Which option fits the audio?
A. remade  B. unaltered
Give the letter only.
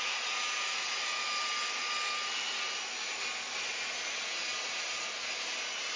B